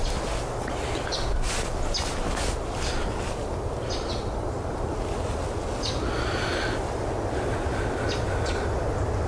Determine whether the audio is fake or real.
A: real